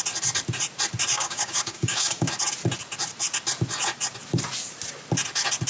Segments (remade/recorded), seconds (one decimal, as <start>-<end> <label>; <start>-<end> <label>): 0.0-1.1 recorded; 1.1-2.3 remade; 2.3-5.7 recorded